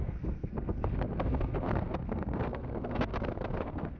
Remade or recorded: remade